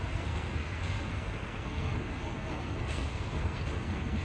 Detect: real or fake fake